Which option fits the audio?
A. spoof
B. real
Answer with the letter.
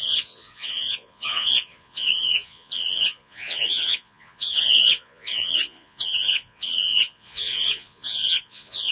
A